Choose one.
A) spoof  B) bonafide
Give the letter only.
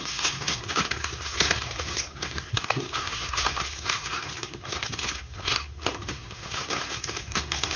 A